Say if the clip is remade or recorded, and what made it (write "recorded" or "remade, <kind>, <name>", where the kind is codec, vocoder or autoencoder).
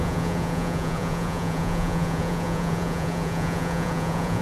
remade, vocoder, Vocos